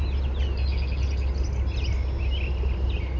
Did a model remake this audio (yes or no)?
no